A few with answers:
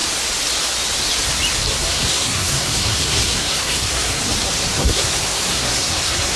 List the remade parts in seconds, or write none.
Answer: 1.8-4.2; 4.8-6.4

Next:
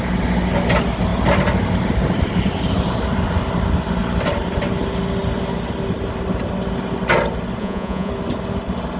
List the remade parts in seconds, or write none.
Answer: 7.6-8.1

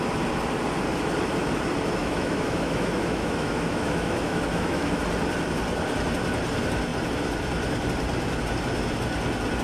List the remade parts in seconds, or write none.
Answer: 2.0-5.0